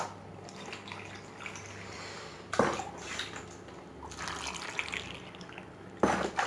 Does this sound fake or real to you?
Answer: real